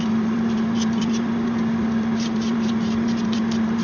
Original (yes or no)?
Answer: no